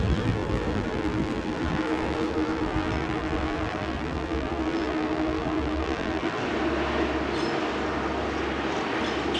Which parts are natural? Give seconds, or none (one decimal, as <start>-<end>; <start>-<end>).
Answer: 6.4-9.4